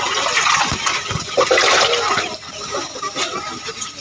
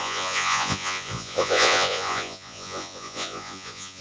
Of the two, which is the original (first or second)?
first